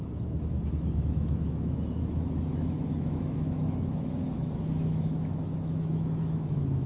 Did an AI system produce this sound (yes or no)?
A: yes